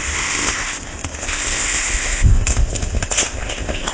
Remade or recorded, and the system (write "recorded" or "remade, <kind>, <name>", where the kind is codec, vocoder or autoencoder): remade, codec, ZipCodec